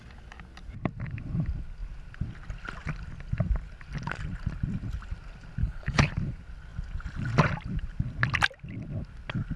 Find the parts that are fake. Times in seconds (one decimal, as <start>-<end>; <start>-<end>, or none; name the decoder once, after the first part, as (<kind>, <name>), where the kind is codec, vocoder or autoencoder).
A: 5.6-6.1 (codec, HILCodec)